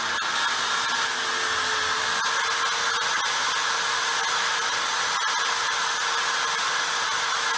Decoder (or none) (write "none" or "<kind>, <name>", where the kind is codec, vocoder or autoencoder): none